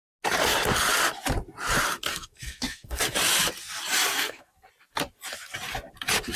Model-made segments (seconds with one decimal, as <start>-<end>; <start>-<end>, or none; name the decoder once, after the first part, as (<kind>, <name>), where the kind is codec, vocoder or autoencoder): 2.1-3.0 (codec, SNAC); 4.1-4.7